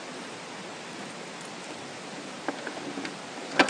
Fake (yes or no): no